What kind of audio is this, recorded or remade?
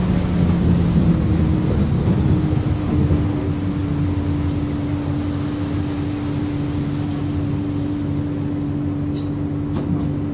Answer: recorded